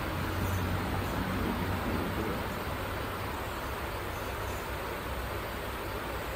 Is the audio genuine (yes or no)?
yes